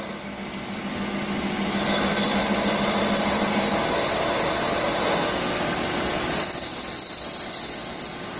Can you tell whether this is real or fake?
real